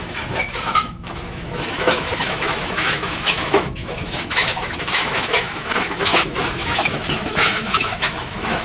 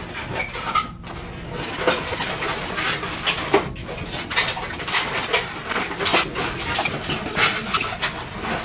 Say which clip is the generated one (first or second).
first